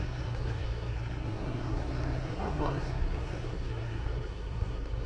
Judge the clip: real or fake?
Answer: fake